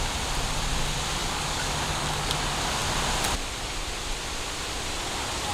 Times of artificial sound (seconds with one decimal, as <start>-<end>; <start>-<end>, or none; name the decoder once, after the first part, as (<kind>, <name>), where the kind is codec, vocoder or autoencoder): 1.2-2.3 (codec, DAC)